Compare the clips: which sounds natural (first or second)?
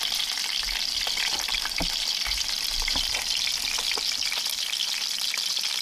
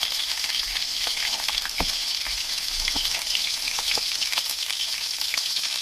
first